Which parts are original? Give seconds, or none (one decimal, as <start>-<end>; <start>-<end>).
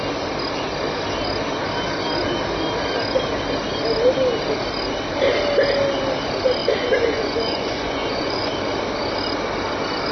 0.0-6.6; 8.5-10.1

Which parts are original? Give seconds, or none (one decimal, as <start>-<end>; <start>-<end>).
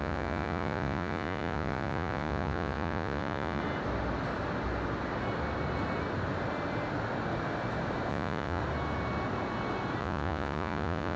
3.6-8.1; 8.6-10.0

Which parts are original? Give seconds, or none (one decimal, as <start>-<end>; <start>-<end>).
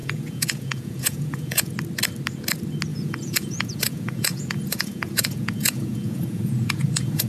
1.7-2.9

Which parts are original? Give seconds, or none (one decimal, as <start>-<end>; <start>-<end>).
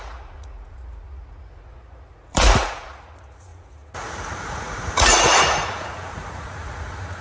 none